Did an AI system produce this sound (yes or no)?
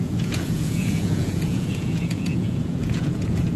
yes